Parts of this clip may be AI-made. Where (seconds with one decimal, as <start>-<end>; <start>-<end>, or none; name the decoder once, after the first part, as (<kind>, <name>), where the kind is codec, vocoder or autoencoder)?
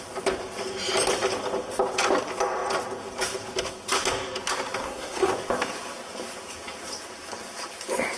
4.8-5.3 (codec, SNAC)